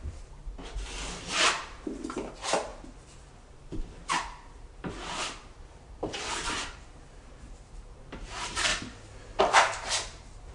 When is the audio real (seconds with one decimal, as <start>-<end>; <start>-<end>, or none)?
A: 0.4-1.1; 8.7-9.4